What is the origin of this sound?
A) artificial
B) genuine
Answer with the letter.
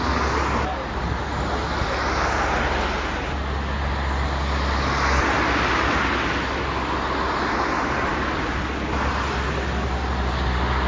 B